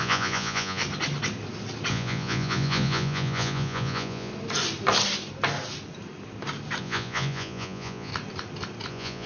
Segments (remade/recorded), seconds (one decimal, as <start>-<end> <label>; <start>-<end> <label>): 0.0-0.8 remade; 0.8-1.9 recorded; 1.9-4.3 remade; 4.3-6.8 recorded; 6.8-8.1 remade; 8.1-8.9 recorded; 8.9-9.3 remade